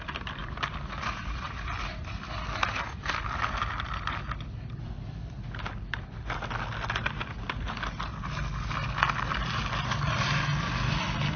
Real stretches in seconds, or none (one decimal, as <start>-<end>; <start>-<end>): 0.0-11.4